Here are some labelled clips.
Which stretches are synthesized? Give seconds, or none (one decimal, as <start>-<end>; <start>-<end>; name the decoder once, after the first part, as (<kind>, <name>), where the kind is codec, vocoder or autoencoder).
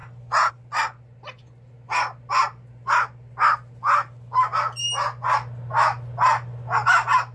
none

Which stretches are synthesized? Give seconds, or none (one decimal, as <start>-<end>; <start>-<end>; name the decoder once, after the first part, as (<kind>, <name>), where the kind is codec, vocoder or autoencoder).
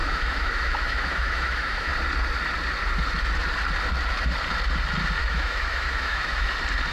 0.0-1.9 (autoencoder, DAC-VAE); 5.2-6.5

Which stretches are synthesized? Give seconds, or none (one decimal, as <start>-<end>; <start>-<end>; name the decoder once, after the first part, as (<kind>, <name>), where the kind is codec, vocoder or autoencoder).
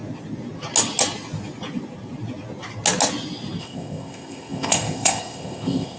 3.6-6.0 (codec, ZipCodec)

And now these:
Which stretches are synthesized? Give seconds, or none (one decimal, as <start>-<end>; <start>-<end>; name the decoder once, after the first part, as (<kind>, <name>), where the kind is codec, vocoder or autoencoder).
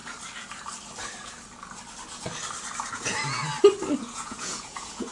2.9-3.4 (vocoder, Vocos); 4.0-5.1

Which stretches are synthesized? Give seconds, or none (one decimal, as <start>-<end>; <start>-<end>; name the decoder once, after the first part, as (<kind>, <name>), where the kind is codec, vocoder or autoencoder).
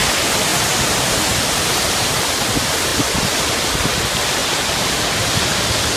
0.5-2.2 (vocoder, BigVGAN v2); 2.9-3.4; 4.4-5.4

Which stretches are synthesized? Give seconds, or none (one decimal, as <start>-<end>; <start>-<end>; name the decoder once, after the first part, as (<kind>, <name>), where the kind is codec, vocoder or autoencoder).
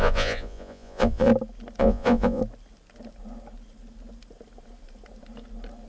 0.0-1.3 (vocoder, Vocos); 1.8-2.4